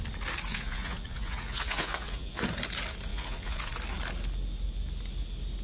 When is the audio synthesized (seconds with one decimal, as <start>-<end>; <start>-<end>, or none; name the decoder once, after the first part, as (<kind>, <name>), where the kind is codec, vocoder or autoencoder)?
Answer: 0.5-2.4 (vocoder, Vocos); 3.1-3.7